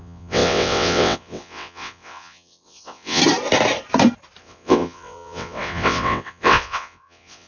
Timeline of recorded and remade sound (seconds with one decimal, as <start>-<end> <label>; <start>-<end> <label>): 0.0-3.2 remade; 3.2-4.4 recorded; 4.4-7.5 remade